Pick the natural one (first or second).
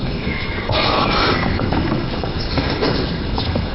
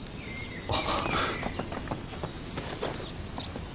second